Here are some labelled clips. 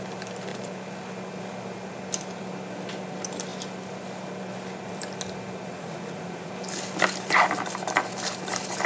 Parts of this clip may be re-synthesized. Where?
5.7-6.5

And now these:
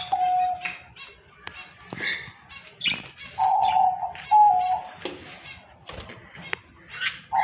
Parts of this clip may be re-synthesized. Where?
none

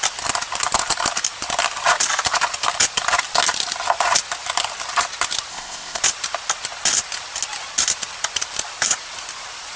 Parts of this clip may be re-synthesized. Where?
5.5-6.0

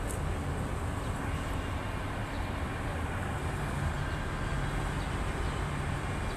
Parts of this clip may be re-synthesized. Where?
none

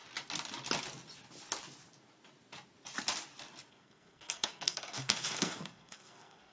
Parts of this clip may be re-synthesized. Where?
3.7-6.5

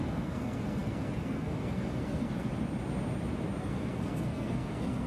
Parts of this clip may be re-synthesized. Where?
0.0-2.5; 3.6-5.1

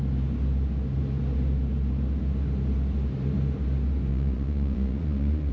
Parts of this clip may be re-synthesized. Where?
4.1-5.5